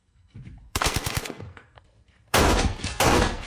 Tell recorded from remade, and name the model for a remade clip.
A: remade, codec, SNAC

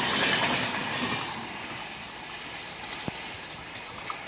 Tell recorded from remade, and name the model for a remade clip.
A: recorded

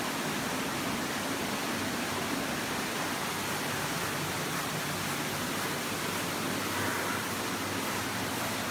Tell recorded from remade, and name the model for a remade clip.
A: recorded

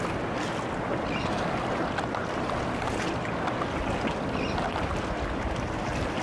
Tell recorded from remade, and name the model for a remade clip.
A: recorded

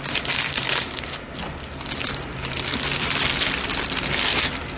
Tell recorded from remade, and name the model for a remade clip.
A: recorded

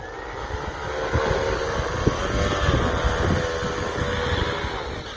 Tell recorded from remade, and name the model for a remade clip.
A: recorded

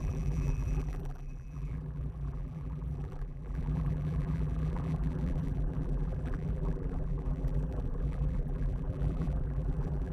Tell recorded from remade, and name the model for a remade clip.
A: remade, vocoder, BigVGAN v2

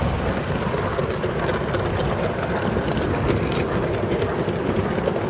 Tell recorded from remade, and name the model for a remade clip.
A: recorded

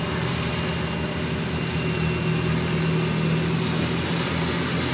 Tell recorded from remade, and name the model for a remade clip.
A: recorded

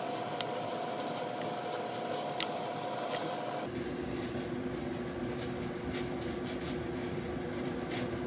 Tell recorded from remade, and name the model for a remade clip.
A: recorded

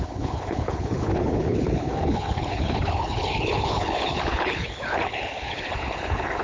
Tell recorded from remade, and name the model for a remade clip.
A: remade, codec, HILCodec